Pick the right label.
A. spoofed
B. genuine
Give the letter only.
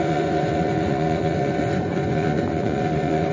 A